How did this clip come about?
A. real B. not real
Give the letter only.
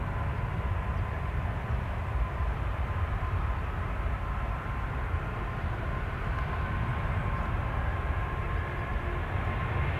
A